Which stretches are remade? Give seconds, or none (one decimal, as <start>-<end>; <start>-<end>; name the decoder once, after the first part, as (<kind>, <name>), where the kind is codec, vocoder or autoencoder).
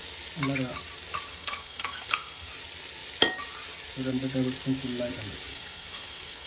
1.3-2.5 (codec, SNAC); 5.5-6.5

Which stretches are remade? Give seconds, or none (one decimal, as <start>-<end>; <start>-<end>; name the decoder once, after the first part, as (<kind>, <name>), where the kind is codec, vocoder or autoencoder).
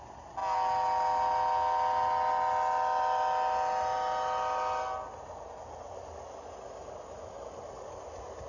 none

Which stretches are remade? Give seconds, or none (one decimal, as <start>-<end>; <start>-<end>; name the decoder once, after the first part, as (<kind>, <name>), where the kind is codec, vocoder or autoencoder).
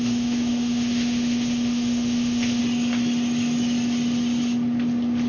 0.0-2.6 (autoencoder, DAC-VAE)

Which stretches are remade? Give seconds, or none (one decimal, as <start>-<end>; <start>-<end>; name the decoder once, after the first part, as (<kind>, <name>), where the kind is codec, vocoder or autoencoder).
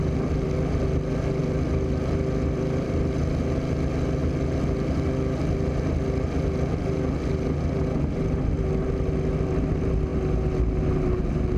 1.4-3.2 (vocoder, BigVGAN v2)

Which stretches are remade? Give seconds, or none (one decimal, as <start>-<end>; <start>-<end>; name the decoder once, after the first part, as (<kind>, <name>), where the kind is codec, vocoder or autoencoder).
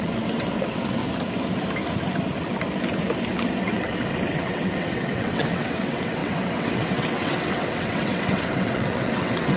0.0-1.0 (vocoder, WaveNeXt); 3.6-9.6